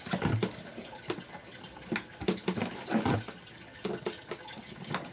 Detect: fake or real real